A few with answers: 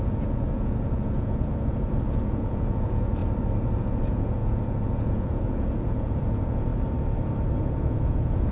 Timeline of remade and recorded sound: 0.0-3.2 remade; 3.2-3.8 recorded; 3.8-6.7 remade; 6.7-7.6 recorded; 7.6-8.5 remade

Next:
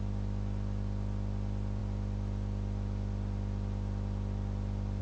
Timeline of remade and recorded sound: 0.0-5.0 recorded

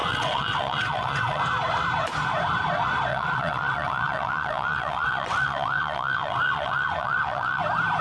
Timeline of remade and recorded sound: 0.0-1.4 remade; 1.4-3.1 recorded; 3.1-7.6 remade; 7.6-8.0 recorded

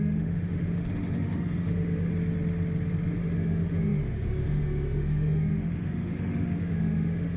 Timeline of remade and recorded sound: 0.0-2.1 remade; 2.1-3.1 recorded; 3.1-7.4 remade

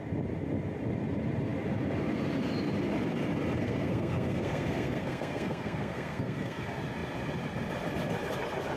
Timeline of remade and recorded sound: 0.0-3.6 recorded; 3.6-6.6 remade; 6.6-8.8 recorded

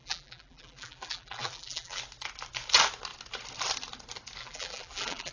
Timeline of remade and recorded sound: 0.0-2.0 remade; 2.0-4.4 recorded; 4.4-5.3 remade